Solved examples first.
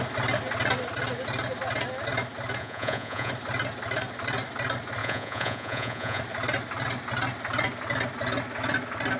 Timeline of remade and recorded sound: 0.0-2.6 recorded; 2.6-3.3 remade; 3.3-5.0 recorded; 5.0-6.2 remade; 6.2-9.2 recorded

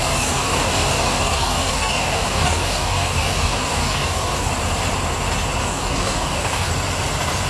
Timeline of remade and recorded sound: 0.0-4.5 remade; 4.5-5.6 recorded; 5.6-6.7 remade; 6.7-7.5 recorded

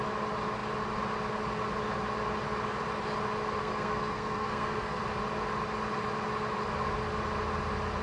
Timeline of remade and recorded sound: 0.0-3.6 recorded; 3.6-5.0 remade; 5.0-8.0 recorded

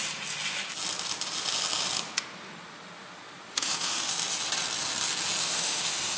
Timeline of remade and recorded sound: 0.0-3.5 recorded; 3.5-4.1 remade; 4.1-5.4 recorded; 5.4-6.2 remade

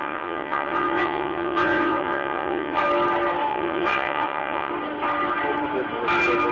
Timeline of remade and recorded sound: 0.0-2.8 remade; 2.8-3.5 recorded; 3.5-4.7 remade; 4.7-6.5 recorded

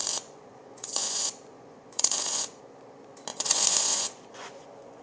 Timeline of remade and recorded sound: 0.0-2.6 remade; 2.6-3.3 recorded; 3.3-5.0 remade

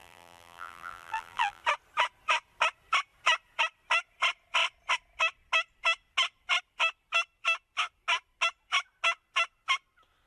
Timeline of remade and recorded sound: 0.0-1.6 remade; 1.6-10.3 recorded